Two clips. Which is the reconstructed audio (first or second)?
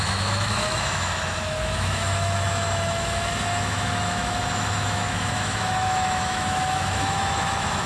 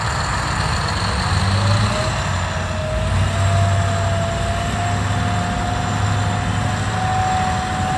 first